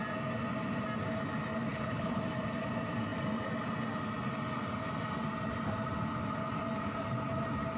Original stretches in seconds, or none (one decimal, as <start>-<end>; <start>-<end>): 0.0-1.7; 2.2-7.8